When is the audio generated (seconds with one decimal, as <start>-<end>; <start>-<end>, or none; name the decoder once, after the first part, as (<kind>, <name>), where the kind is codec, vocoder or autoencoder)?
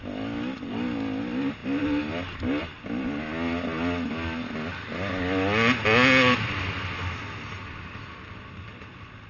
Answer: none